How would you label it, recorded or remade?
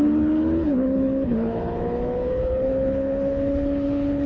remade